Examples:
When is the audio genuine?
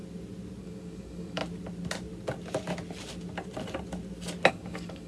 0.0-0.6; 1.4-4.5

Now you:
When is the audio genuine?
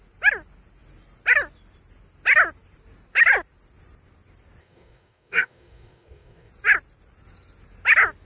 0.0-4.6; 6.5-8.2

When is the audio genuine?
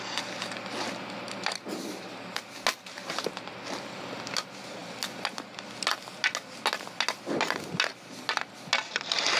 0.0-9.4